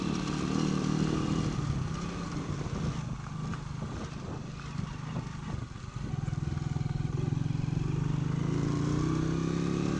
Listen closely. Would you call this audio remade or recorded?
recorded